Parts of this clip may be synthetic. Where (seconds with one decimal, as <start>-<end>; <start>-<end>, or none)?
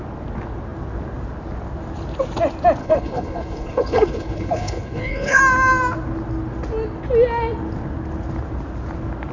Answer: 2.8-5.4